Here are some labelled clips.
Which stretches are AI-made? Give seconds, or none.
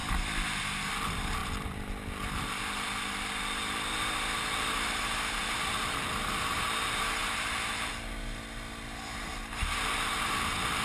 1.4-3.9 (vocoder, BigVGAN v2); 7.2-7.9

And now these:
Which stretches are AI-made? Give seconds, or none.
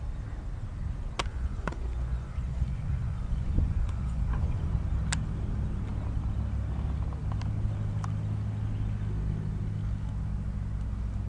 1.3-4.7 (vocoder, Vocos)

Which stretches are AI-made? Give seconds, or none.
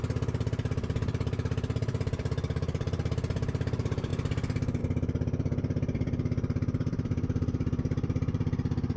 0.0-4.1 (vocoder, BigVGAN v2); 4.8-9.0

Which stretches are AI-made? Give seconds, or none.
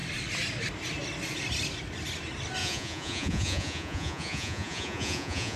2.6-5.6 (vocoder, Vocos)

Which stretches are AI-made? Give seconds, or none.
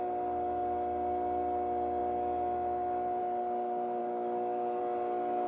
4.0-4.8 (codec, DAC)